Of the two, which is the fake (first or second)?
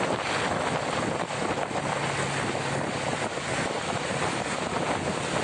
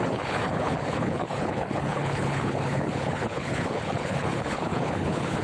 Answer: second